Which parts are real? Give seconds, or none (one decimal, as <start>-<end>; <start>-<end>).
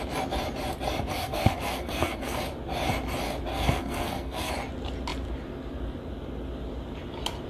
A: 0.0-1.1; 2.4-3.5; 4.5-7.5